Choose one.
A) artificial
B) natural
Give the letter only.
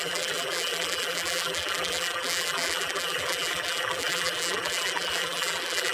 A